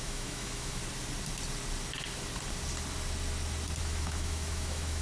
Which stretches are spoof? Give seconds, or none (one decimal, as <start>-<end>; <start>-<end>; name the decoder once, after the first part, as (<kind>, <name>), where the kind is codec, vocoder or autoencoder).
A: 0.0-0.8 (autoencoder, DAC-VAE); 3.8-5.0